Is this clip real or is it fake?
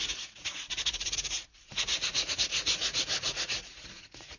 fake